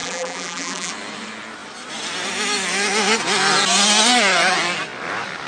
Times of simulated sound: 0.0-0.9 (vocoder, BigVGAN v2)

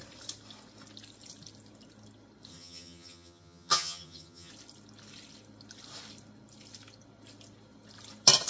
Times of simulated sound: 2.5-4.5 (vocoder, HiFi-GAN)

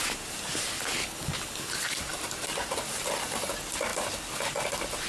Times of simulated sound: 1.0-1.7 (codec, HILCodec)